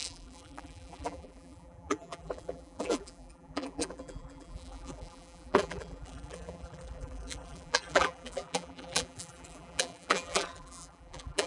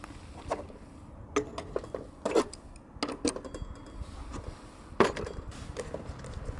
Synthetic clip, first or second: first